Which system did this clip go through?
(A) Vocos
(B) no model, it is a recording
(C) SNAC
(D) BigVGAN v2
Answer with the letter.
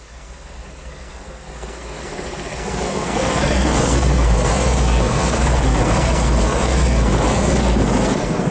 C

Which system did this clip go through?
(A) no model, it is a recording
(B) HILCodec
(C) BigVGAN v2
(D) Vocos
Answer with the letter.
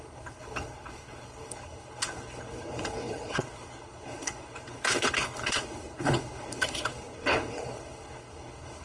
B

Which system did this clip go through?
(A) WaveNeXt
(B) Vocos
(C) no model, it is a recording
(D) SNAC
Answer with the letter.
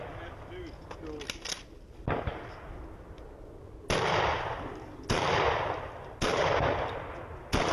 C